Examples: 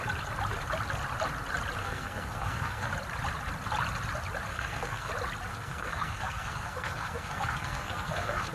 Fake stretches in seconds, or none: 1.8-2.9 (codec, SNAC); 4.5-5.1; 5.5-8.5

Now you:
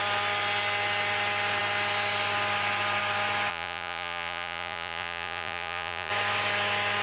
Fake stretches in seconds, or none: 3.5-6.1 (vocoder, Vocos)

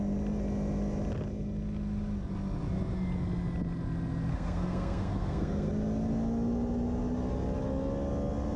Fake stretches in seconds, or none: 4.3-5.7 (codec, SNAC)

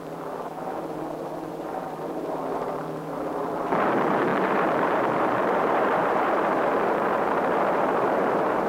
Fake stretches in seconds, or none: 0.0-8.7 (vocoder, BigVGAN v2)

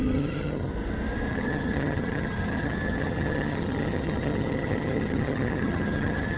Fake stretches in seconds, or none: 0.0-0.7 (vocoder, HiFi-GAN); 1.3-6.4

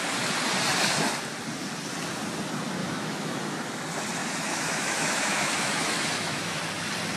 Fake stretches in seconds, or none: 2.8-3.8 (autoencoder, DAC-VAE); 4.2-6.6

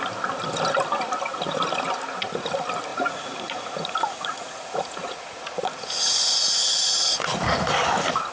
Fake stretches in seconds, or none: 2.9-7.4 (vocoder, Vocos)

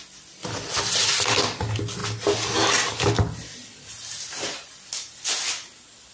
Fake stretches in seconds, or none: none